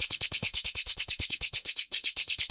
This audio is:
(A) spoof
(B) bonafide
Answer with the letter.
A